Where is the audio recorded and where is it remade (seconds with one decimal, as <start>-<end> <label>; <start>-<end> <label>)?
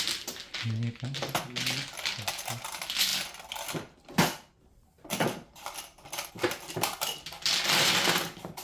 0.0-8.6 recorded